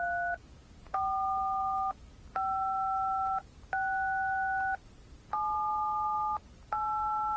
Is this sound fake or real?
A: real